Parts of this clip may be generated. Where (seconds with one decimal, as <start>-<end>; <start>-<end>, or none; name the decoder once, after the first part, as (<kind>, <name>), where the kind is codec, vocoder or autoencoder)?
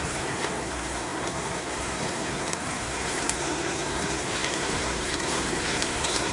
0.0-6.3 (codec, SNAC)